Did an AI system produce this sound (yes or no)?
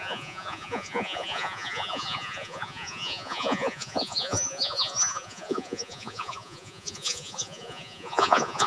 yes